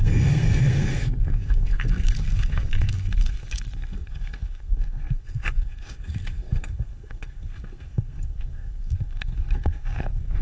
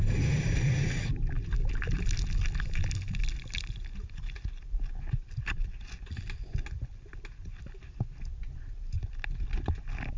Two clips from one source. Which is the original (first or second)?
second